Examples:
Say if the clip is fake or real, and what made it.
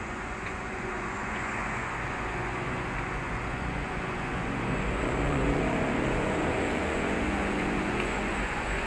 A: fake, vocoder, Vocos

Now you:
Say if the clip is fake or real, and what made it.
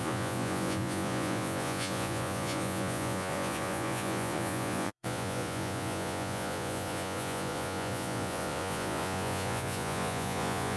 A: fake, vocoder, Vocos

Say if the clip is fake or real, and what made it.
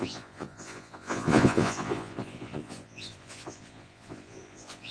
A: fake, vocoder, Vocos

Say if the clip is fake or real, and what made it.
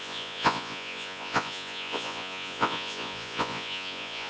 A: fake, vocoder, Vocos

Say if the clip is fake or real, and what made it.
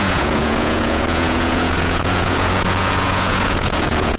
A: fake, vocoder, Vocos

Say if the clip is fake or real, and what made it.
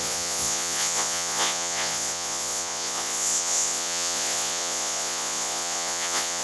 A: fake, vocoder, Vocos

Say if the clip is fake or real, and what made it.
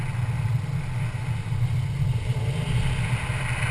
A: real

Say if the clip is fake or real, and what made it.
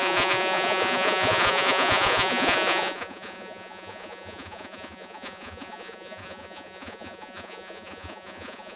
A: fake, vocoder, Vocos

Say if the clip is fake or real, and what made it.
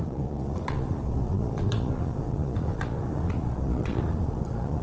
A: fake, vocoder, Vocos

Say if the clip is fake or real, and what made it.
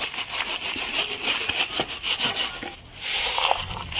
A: real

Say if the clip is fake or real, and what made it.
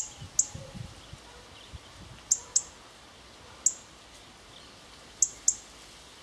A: real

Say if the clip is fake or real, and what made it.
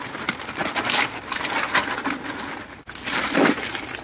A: real